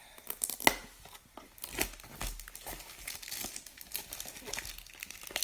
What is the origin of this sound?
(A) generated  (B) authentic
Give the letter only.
B